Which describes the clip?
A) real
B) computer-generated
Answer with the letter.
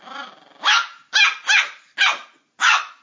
A